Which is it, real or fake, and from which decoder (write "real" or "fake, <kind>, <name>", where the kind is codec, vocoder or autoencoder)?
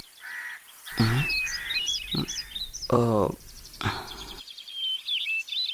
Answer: fake, vocoder, BigVGAN v2